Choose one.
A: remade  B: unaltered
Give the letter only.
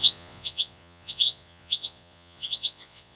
A